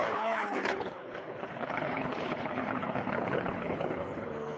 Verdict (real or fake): fake